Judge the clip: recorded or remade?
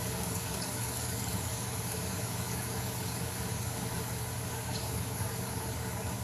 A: remade